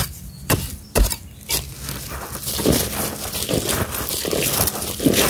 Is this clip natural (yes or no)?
yes